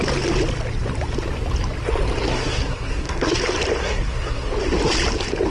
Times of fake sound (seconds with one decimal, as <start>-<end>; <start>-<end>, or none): 2.3-3.4; 3.8-4.5